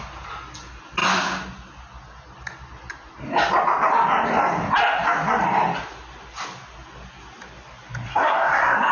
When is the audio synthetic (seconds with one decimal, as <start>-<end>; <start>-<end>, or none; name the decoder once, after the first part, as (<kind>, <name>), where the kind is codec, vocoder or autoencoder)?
8.1-8.9 (codec, SNAC)